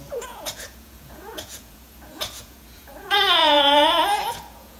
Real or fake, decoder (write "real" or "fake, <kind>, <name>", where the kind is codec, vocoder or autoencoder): fake, vocoder, Vocos